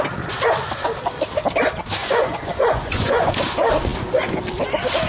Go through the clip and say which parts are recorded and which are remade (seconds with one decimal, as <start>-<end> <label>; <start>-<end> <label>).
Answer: 0.0-2.0 recorded; 2.0-3.3 remade; 3.3-5.1 recorded